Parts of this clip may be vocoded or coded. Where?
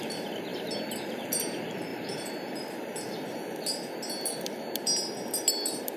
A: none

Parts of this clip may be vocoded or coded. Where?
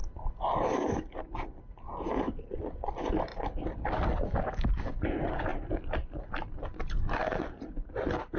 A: none